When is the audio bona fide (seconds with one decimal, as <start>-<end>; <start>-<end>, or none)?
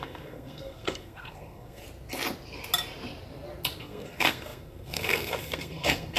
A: 1.8-3.8